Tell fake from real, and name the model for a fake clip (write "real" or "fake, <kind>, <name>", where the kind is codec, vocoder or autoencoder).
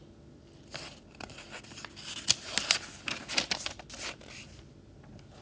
real